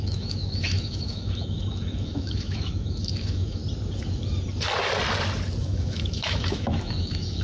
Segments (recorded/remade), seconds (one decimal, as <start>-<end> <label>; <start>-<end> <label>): 0.0-3.6 remade; 3.6-5.6 recorded; 5.6-7.4 remade